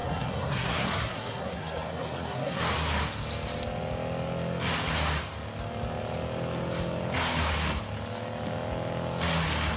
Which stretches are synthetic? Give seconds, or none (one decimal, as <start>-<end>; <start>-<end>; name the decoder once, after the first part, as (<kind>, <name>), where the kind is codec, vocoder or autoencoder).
0.0-2.6 (codec, SNAC)